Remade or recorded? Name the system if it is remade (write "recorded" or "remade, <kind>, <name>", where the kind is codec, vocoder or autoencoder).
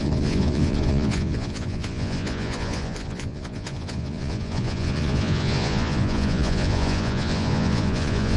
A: remade, vocoder, Vocos